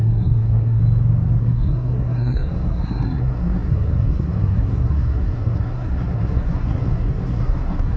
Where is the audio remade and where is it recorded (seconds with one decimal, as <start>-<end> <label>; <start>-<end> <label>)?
0.0-0.8 remade; 0.8-1.4 recorded; 1.4-8.0 remade